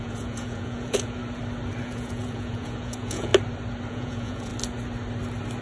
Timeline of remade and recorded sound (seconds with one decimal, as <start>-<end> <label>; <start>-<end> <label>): 0.0-1.2 remade; 1.2-1.8 recorded; 1.8-3.3 remade; 3.3-3.9 recorded; 3.9-4.5 remade; 4.5-5.6 recorded